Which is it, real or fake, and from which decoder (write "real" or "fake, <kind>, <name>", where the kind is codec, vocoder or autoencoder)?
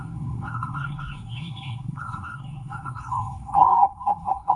fake, codec, SNAC